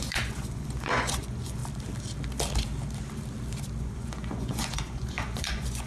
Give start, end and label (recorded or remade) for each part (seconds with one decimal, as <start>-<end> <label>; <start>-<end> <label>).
0.0-1.6 remade; 1.6-3.8 recorded; 3.8-5.9 remade